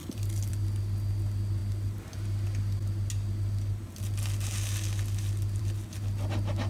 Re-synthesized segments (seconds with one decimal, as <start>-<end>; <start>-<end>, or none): none